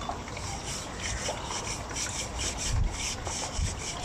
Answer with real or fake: real